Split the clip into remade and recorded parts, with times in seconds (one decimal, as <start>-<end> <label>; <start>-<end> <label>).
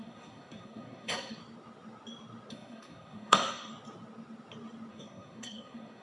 0.0-1.4 remade; 1.4-2.5 recorded; 2.5-3.7 remade; 3.7-4.9 recorded; 4.9-6.0 remade